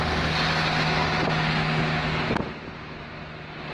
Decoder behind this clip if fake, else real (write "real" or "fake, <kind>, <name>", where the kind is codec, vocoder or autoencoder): real